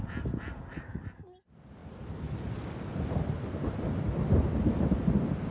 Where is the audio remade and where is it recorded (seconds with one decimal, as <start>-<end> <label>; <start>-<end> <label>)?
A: 0.0-5.5 recorded